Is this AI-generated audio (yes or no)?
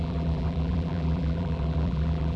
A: yes